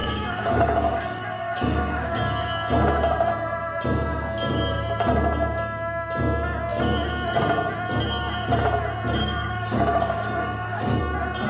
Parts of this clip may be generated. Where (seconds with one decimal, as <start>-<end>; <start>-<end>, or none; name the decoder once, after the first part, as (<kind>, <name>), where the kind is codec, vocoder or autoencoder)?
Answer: 0.0-2.2 (codec, DAC); 9.2-11.0